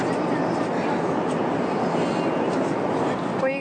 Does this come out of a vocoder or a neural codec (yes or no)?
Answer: no